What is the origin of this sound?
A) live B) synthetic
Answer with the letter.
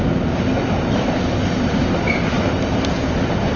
A